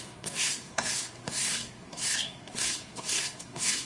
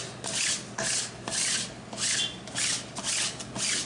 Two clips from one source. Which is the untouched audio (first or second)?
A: second